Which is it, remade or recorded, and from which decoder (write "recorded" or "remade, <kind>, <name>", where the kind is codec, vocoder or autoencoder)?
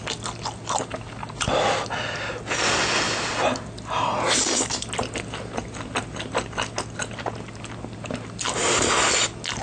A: recorded